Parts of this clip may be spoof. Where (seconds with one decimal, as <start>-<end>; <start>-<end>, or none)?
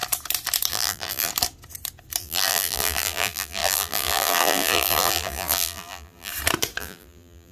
0.7-1.3; 2.2-6.3; 6.8-7.5